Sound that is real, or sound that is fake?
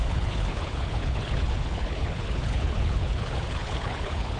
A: fake